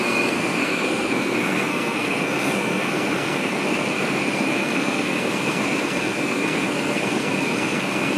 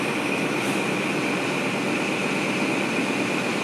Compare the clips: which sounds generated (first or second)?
first